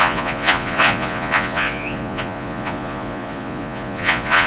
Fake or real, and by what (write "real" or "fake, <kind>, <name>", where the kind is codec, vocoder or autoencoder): fake, vocoder, Vocos